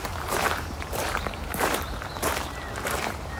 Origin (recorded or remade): remade